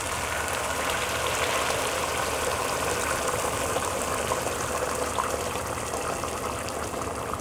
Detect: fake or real fake